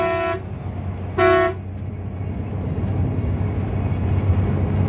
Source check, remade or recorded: recorded